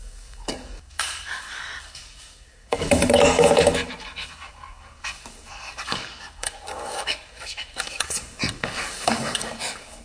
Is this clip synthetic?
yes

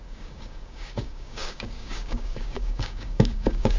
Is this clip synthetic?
yes